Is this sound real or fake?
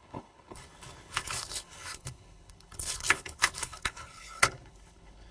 fake